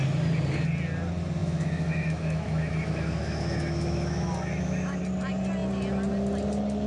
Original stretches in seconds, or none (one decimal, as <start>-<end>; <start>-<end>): 0.0-1.4; 5.0-6.9